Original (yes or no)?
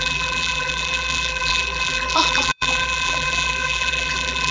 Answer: no